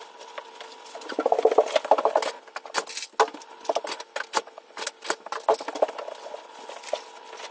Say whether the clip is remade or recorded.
recorded